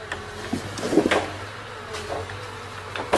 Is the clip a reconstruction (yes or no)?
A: no